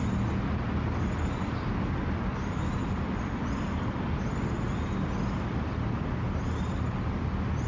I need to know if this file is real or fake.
real